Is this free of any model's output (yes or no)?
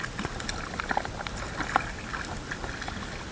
yes